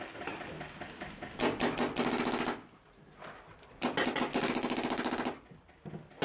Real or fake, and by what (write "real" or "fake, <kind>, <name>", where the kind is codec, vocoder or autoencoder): real